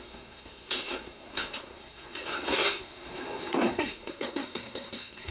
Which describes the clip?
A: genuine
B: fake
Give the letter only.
B